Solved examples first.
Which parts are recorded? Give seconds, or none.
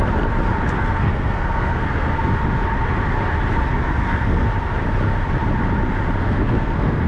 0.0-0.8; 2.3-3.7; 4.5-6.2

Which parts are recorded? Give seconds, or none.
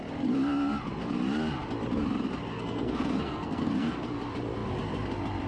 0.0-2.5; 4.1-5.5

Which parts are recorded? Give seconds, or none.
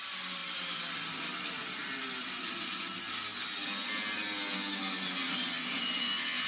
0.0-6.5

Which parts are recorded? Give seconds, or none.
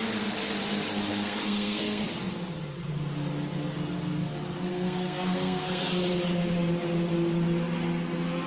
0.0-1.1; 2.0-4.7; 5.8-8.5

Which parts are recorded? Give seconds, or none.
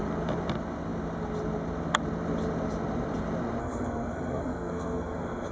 0.0-3.6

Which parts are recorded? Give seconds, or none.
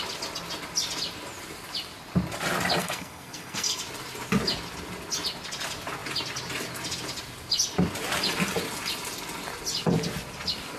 0.0-2.8; 3.8-10.8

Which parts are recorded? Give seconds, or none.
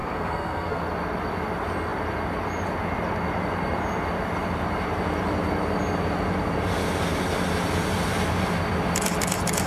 0.8-9.7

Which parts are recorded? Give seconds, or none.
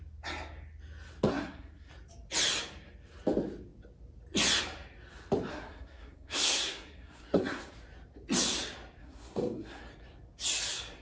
0.0-1.3; 1.9-5.5; 7.7-9.0; 9.8-11.0